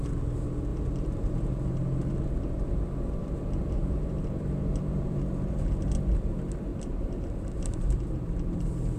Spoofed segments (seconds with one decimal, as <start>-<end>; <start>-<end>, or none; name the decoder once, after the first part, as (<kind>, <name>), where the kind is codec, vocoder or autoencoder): 0.7-1.7 (vocoder, BigVGAN v2); 3.2-5.2; 6.7-9.0